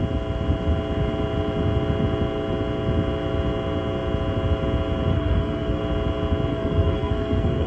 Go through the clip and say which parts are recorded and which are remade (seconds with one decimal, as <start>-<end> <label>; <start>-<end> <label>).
0.0-5.1 recorded; 5.1-5.8 remade; 5.8-6.5 recorded; 6.5-7.7 remade